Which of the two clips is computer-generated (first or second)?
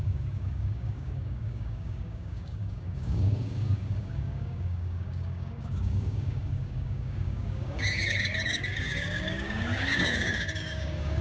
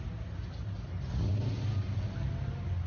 first